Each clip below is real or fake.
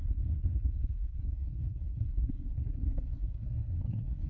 fake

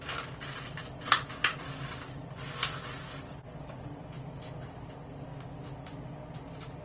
real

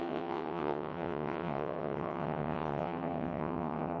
fake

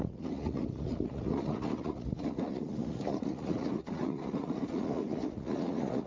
fake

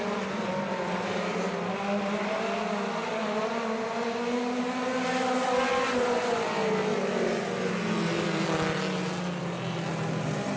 real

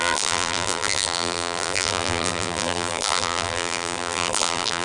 fake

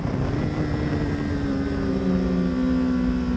real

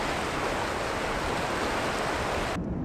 real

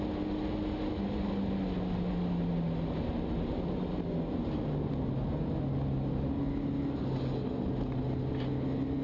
real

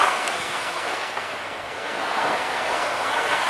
fake